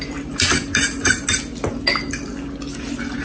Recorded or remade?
recorded